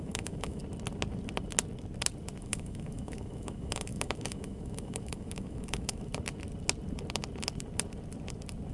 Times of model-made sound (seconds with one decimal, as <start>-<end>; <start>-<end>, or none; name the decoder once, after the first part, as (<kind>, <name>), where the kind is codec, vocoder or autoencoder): 0.0-0.6 (autoencoder, DAC-VAE); 2.4-6.1